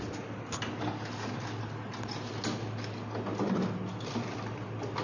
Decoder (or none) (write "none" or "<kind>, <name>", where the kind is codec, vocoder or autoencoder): none